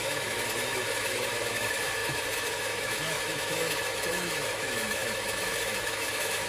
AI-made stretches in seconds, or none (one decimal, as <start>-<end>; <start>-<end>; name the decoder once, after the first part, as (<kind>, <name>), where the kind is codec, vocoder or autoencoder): 0.0-6.5 (autoencoder, DAC-VAE)

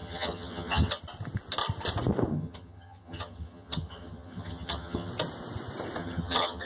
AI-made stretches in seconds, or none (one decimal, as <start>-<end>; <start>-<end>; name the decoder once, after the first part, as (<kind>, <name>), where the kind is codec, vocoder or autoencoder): 0.0-1.0 (vocoder, HiFi-GAN); 2.3-5.1; 6.0-6.7

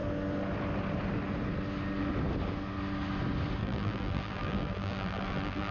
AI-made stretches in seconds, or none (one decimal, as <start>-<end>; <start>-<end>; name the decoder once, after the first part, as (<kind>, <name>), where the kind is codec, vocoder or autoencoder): 3.6-5.7 (vocoder, BigVGAN v2)

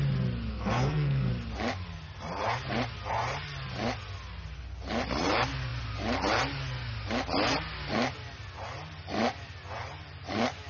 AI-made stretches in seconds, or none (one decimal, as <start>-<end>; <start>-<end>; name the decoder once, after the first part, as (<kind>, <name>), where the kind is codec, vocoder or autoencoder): 0.5-1.3 (codec, SNAC)

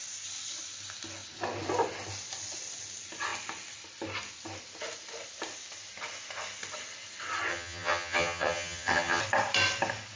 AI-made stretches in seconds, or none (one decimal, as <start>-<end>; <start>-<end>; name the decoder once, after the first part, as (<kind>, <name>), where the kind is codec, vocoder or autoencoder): 7.5-9.2 (vocoder, HiFi-GAN)

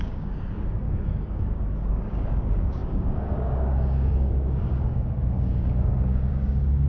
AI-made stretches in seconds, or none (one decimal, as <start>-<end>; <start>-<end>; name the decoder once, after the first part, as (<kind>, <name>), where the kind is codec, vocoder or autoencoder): 0.0-6.9 (codec, DAC)

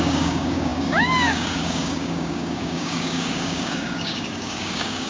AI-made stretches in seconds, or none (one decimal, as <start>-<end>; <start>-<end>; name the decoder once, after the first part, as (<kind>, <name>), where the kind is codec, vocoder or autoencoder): 0.0-5.1 (codec, DAC)